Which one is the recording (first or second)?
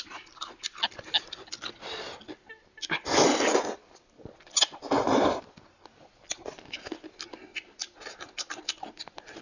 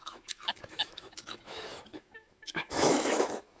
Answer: first